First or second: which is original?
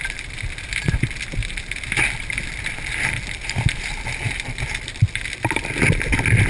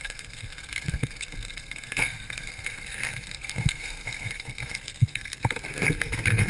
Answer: first